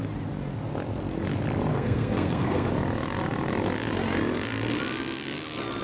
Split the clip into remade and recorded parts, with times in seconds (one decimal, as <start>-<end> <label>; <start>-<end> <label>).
0.0-1.7 recorded; 1.7-2.7 remade; 2.7-5.8 recorded